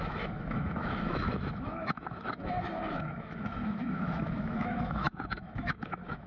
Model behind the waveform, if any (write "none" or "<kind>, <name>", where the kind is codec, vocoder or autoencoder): autoencoder, DAC-VAE